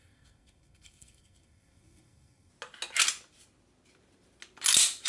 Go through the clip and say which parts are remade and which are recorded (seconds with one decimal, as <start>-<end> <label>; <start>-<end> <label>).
0.0-2.5 remade; 2.5-5.1 recorded